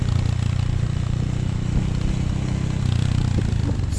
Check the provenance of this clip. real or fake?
real